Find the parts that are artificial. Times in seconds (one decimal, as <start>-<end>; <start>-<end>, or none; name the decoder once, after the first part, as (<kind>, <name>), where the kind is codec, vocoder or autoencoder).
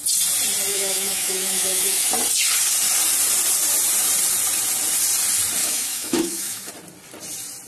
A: 0.7-2.1 (autoencoder, DAC-VAE); 5.6-6.7